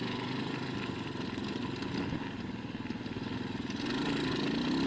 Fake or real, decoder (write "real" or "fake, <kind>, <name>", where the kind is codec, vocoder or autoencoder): real